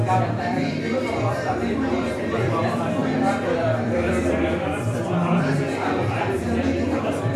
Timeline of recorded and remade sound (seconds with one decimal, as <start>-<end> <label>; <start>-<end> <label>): 0.0-7.4 remade